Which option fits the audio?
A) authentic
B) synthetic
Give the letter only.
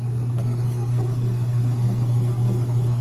B